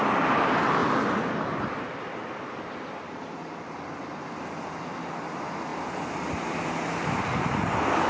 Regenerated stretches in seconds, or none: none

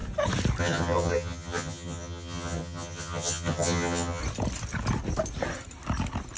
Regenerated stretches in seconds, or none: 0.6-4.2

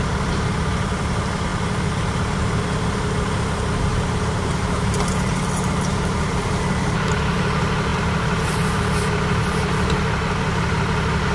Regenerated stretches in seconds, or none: 3.9-6.5; 7.9-8.8

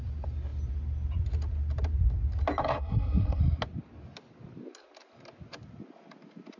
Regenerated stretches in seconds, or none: 2.6-3.4

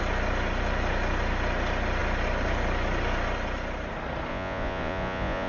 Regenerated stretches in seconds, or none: 4.3-5.5